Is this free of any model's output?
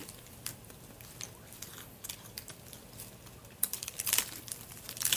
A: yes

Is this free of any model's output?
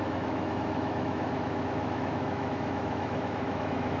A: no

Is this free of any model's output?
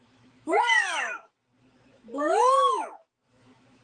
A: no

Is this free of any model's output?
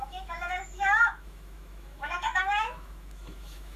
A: no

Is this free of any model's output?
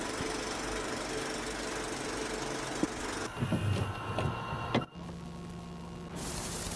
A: yes